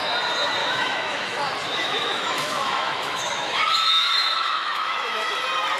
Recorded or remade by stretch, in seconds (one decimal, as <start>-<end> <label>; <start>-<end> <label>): 0.0-0.6 recorded; 0.6-1.4 remade; 1.4-1.8 recorded; 1.8-5.3 remade; 5.3-5.8 recorded

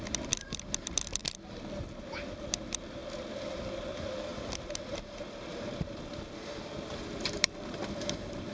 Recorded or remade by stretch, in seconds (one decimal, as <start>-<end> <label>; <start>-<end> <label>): 0.0-1.2 remade; 1.2-2.5 recorded; 2.5-3.0 remade; 3.0-3.5 recorded; 3.5-6.1 remade; 6.1-6.9 recorded; 6.9-8.5 remade

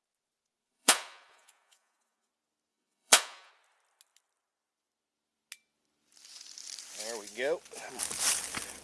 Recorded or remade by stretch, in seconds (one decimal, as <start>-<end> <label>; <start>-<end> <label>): 0.0-0.6 recorded; 0.6-2.3 remade; 2.3-2.7 recorded; 2.7-3.5 remade; 3.5-8.8 recorded

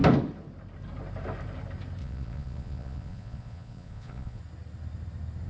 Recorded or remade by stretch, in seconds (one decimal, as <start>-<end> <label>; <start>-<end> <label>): 0.0-2.0 recorded; 2.0-4.4 remade; 4.4-5.5 recorded

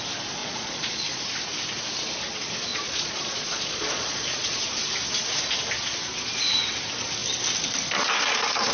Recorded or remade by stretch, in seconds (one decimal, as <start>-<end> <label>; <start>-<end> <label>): 0.0-0.4 recorded; 0.4-1.2 remade; 1.2-2.7 recorded; 2.7-4.6 remade; 4.6-8.7 recorded

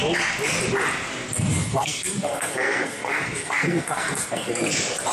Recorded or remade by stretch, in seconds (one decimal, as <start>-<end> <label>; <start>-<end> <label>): 0.0-1.5 recorded; 1.5-4.6 remade; 4.6-5.1 recorded

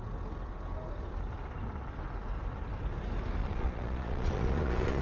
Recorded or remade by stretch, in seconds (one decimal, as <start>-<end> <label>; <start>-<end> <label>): 0.0-3.4 recorded; 3.4-5.0 remade